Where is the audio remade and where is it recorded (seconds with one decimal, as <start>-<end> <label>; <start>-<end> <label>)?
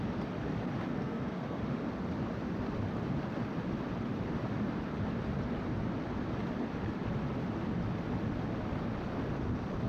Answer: 0.0-0.9 recorded; 0.9-1.6 remade; 1.6-9.9 recorded